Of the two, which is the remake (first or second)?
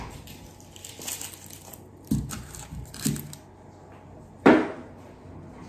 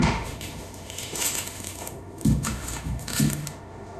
second